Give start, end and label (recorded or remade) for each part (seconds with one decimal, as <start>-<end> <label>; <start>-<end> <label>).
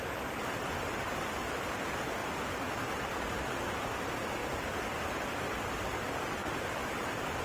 0.0-2.2 recorded; 2.2-2.7 remade; 2.7-6.4 recorded; 6.4-7.4 remade